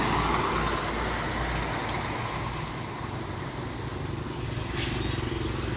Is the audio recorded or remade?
recorded